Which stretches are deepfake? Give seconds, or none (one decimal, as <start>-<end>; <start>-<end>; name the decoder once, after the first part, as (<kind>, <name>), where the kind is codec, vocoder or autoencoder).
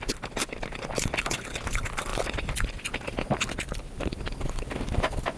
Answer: none